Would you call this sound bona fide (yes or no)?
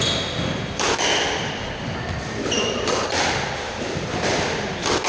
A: yes